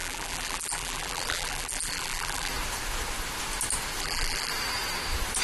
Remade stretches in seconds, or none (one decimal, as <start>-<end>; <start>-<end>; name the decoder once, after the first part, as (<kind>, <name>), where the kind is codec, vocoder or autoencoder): 0.0-2.5 (vocoder, BigVGAN v2); 4.0-4.5